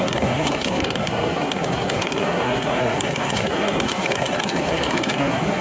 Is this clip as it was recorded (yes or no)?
no